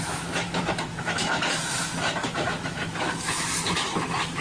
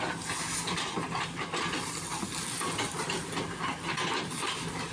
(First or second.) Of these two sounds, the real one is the second